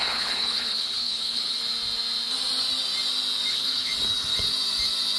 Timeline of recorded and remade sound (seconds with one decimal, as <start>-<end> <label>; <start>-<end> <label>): 0.0-1.6 remade; 1.6-3.5 recorded; 3.5-3.9 remade; 3.9-5.2 recorded